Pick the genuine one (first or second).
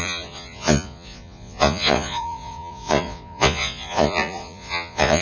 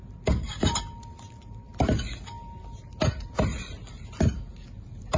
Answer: second